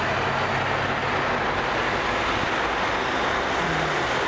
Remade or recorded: recorded